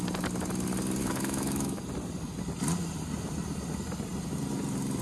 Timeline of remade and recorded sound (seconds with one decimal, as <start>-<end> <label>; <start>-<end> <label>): 0.0-1.0 recorded; 1.0-1.8 remade; 1.8-5.0 recorded